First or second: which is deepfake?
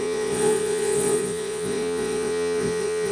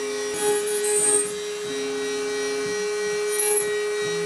first